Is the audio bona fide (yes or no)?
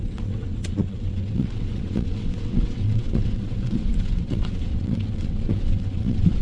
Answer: no